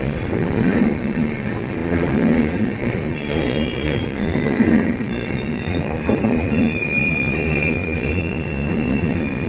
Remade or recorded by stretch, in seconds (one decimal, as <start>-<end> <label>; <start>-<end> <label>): 0.0-9.5 remade